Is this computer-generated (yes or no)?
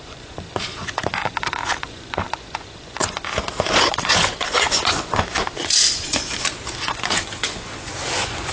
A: yes